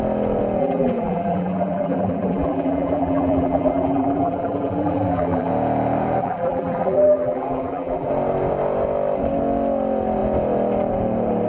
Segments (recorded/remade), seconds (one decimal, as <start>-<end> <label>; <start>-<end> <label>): 0.0-0.6 recorded; 0.6-5.5 remade; 5.5-6.2 recorded; 6.2-8.1 remade; 8.1-11.5 recorded